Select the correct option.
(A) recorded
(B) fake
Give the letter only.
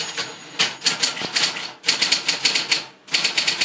A